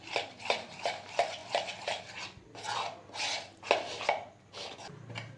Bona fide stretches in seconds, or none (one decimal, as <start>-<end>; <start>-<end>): 0.0-5.4